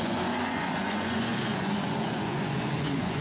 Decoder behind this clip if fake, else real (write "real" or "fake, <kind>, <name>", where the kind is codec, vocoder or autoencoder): fake, vocoder, Vocos